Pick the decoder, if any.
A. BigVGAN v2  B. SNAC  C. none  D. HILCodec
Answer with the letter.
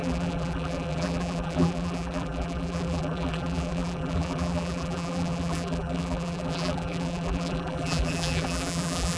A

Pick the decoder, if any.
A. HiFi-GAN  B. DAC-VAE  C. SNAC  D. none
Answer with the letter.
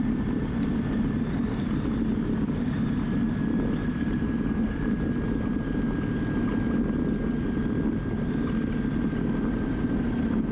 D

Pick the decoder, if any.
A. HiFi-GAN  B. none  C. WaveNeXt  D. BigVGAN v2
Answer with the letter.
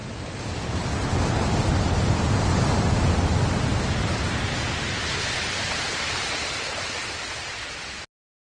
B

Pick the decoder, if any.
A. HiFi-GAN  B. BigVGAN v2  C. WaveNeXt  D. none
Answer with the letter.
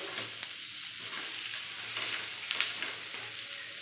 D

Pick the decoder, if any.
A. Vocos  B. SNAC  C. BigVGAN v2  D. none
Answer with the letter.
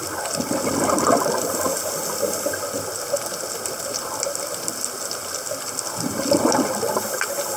D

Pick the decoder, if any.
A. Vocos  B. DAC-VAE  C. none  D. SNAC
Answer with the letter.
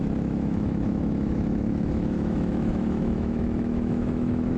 B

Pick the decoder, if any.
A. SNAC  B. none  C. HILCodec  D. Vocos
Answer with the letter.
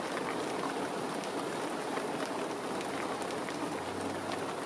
B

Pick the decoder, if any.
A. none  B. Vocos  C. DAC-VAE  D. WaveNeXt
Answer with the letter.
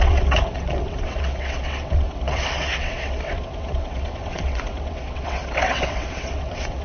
D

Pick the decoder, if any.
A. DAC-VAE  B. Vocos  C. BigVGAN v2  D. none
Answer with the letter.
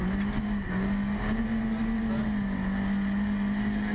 D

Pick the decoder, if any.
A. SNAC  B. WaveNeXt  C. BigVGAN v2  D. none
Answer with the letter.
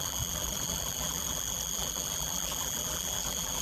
C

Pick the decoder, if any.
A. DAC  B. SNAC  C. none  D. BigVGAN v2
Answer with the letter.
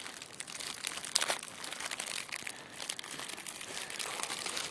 D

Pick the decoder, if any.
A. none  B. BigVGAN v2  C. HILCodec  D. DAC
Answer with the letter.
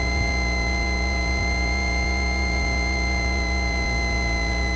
A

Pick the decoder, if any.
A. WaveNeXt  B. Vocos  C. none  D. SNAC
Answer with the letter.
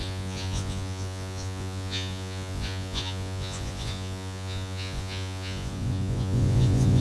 B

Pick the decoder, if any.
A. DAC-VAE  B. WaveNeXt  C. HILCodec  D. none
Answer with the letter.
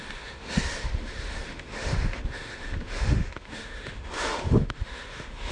A